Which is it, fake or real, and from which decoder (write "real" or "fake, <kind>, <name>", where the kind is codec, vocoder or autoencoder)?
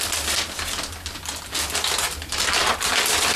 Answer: real